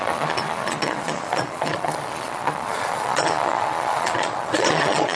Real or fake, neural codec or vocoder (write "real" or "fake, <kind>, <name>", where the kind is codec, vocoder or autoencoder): fake, vocoder, Vocos